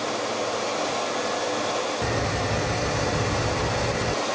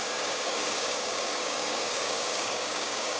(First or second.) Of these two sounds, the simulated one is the second